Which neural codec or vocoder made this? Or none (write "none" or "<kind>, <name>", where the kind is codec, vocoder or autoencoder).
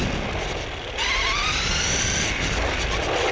none